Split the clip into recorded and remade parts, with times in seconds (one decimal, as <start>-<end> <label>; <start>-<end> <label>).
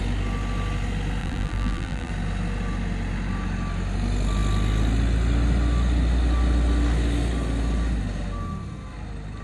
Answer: 0.0-1.2 recorded; 1.2-2.1 remade; 2.1-9.4 recorded